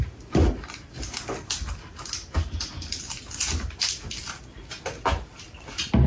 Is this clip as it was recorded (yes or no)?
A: yes